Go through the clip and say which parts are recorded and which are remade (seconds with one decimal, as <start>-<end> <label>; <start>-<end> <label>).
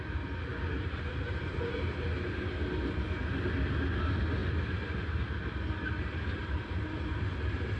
0.0-0.5 recorded; 0.5-2.7 remade; 2.7-6.4 recorded; 6.4-7.1 remade; 7.1-7.8 recorded